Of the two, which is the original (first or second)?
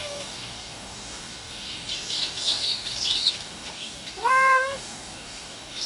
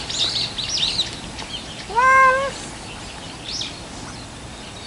second